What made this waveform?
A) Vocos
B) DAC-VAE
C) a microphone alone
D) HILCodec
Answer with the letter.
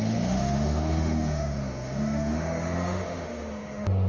B